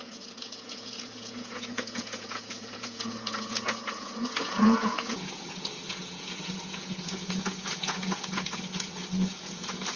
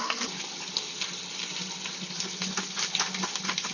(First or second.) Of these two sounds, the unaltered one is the second